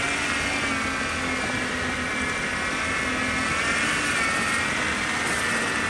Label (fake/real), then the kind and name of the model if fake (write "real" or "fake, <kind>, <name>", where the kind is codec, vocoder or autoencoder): real